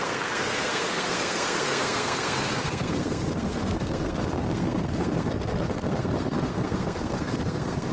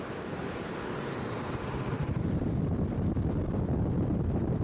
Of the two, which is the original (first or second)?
second